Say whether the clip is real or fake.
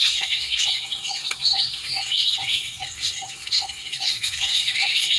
fake